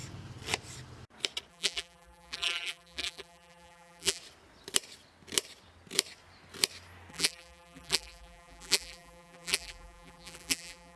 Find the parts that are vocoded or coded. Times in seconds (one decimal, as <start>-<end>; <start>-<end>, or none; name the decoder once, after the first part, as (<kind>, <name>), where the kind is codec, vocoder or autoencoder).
1.5-4.2 (vocoder, BigVGAN v2); 7.1-11.0